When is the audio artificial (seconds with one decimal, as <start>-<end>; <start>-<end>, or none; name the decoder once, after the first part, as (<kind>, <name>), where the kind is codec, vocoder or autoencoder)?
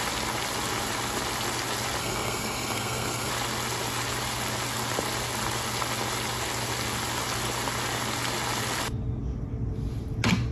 2.0-3.3 (codec, SNAC)